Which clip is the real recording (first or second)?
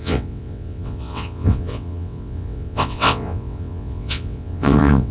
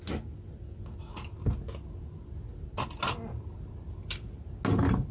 second